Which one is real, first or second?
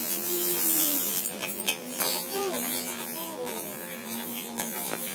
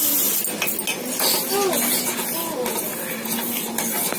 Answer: second